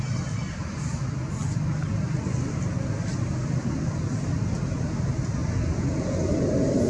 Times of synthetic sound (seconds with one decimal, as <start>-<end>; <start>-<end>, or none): none